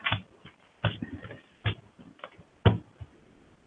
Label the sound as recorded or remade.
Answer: recorded